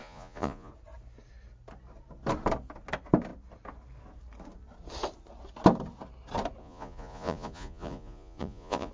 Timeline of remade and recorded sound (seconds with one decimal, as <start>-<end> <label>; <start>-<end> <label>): 0.0-0.7 remade; 0.7-6.6 recorded; 6.6-8.9 remade